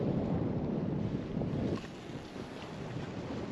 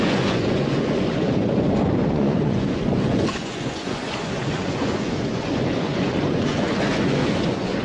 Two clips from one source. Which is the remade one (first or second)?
second